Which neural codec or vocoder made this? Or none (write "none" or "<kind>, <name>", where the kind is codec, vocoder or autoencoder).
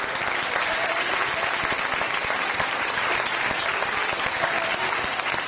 vocoder, BigVGAN v2